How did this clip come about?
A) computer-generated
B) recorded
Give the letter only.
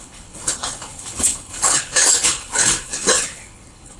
A